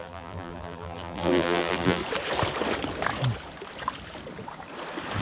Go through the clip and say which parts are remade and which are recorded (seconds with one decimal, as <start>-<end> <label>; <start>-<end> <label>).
0.0-2.0 remade; 2.0-5.2 recorded